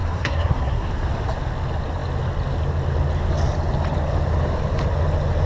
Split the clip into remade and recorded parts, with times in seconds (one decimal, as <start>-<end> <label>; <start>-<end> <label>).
0.0-0.9 remade; 0.9-5.5 recorded